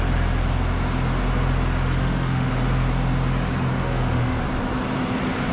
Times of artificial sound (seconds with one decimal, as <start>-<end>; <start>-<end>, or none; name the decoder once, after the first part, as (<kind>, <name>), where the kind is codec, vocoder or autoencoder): 2.0-2.5 (autoencoder, DAC-VAE); 3.8-4.4

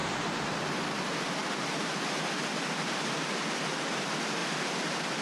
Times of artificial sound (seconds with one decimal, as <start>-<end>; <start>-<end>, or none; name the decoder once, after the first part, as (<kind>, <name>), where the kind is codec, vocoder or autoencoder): 0.0-0.6 (vocoder, BigVGAN v2)

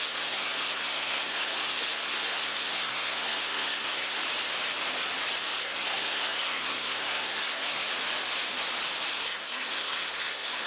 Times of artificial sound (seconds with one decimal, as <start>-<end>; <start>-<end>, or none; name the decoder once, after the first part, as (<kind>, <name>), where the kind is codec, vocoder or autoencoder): 0.0-4.2 (codec, SNAC); 5.6-7.9; 9.1-10.7

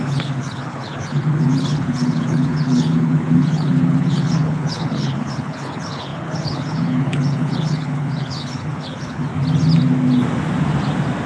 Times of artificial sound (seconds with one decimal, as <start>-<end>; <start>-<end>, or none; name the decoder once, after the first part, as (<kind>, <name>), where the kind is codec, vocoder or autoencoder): 0.0-9.3 (codec, HILCodec)

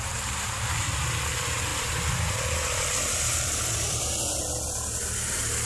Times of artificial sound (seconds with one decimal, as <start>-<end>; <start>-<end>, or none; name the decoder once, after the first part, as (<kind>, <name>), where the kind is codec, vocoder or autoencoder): 1.7-4.4 (vocoder, BigVGAN v2)

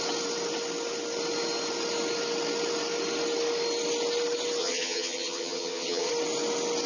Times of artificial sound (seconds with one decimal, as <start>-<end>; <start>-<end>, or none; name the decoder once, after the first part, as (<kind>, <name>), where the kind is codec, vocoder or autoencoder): 4.6-6.1 (vocoder, HiFi-GAN)

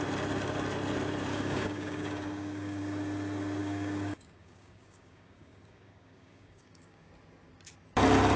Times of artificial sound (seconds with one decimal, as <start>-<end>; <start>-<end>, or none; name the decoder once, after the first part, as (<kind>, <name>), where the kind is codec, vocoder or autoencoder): 1.3-2.8 (codec, DAC); 3.6-7.1

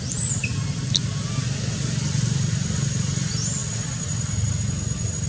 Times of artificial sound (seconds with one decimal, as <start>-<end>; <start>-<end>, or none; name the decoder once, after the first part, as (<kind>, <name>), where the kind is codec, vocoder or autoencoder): none